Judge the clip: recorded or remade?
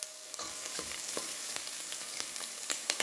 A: remade